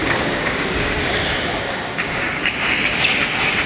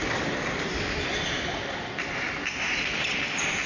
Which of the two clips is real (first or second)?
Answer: second